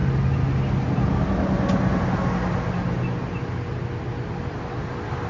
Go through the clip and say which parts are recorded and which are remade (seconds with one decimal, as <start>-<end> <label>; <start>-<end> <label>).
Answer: 0.0-5.3 recorded